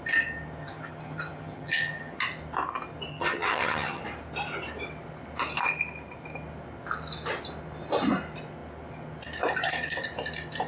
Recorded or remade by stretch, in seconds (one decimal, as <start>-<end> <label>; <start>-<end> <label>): 0.0-0.6 recorded; 0.6-2.2 remade; 2.2-3.1 recorded; 3.1-4.0 remade; 4.0-10.7 recorded